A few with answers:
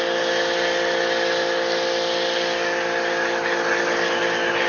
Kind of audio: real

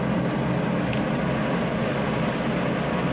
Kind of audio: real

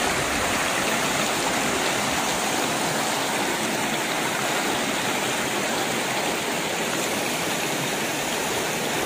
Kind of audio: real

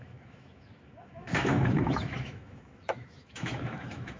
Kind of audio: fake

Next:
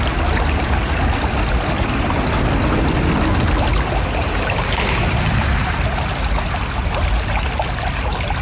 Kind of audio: real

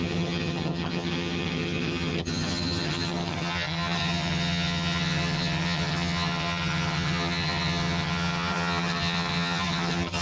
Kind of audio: fake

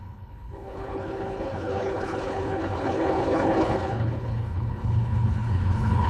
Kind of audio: fake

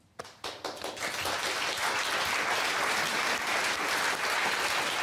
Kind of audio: real